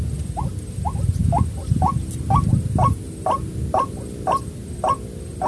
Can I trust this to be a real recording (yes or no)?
yes